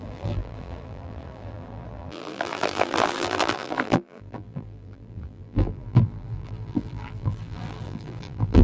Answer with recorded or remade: remade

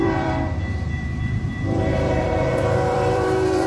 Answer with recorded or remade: remade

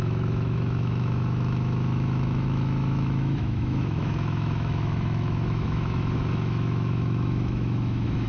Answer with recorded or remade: remade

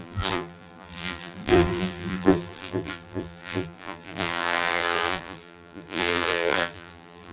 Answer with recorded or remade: remade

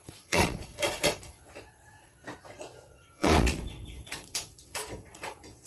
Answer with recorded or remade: remade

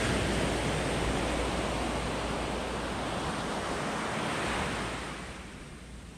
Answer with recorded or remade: recorded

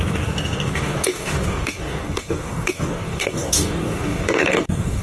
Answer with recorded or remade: remade